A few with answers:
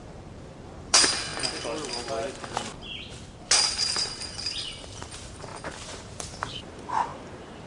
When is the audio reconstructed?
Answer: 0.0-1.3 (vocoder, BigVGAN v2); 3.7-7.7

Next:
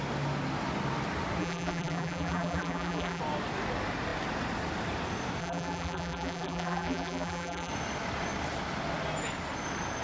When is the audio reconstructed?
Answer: 1.4-3.2 (vocoder, BigVGAN v2); 5.4-7.7

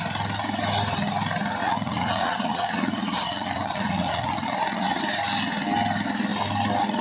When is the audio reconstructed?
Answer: 1.6-5.0 (vocoder, Vocos)

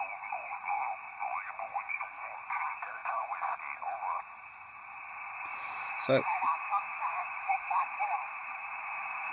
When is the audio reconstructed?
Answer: 5.5-9.3 (autoencoder, DAC-VAE)

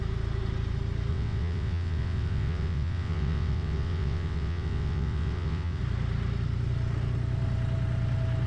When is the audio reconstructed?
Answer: 1.1-5.8 (vocoder, WaveNeXt)

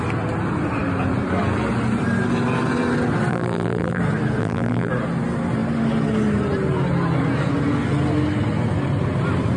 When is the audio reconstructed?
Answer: 3.3-4.0 (vocoder, BigVGAN v2); 4.4-4.9

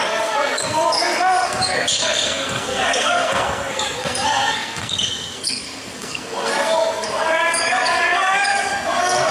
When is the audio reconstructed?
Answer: 0.0-9.3 (codec, SNAC)

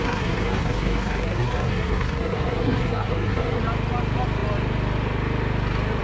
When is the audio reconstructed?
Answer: 0.0-3.6 (codec, SNAC)